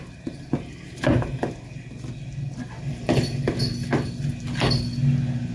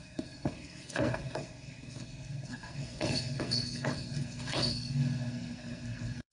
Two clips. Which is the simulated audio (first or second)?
second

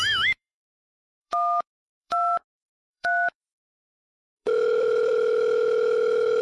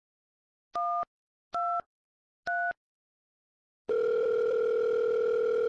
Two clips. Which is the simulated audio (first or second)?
first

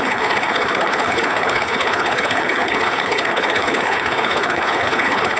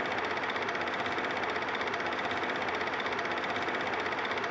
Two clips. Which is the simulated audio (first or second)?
first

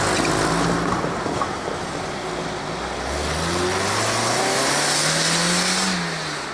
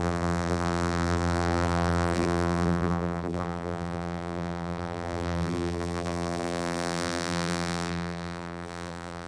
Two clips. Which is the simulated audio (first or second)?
second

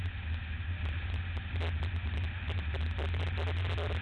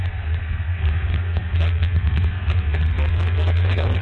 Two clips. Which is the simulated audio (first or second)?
second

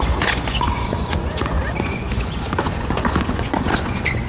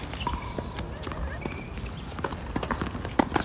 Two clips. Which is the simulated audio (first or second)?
first